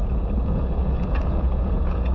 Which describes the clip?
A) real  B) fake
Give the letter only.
B